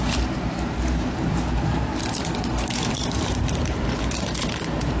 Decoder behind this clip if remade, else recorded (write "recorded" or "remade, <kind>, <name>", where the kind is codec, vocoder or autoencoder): remade, vocoder, BigVGAN v2